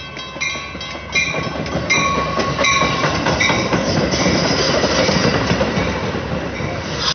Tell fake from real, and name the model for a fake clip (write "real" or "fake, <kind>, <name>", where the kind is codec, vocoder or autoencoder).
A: real